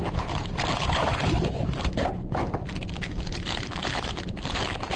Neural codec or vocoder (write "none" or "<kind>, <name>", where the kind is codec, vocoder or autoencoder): vocoder, BigVGAN v2